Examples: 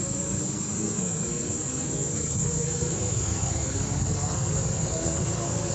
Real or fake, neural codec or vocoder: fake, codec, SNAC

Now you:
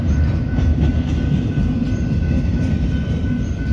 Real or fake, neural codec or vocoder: real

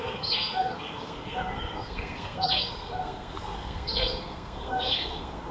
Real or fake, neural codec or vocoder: fake, codec, SNAC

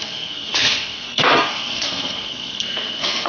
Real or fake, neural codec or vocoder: fake, codec, SNAC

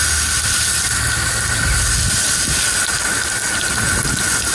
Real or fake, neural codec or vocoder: real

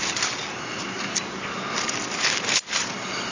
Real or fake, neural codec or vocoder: real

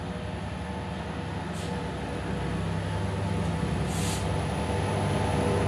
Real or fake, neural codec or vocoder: real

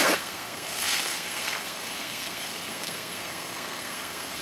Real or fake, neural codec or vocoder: fake, codec, SNAC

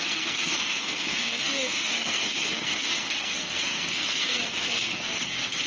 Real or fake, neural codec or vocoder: fake, codec, SNAC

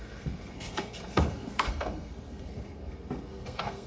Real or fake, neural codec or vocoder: fake, codec, SNAC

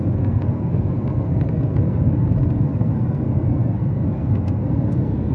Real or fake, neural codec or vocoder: fake, codec, SNAC